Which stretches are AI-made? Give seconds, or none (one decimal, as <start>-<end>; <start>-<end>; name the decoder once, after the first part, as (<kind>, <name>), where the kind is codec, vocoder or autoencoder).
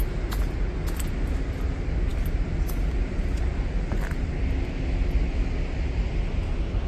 none